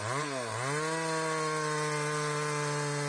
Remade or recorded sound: recorded